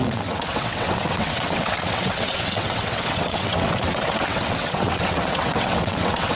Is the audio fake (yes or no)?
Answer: yes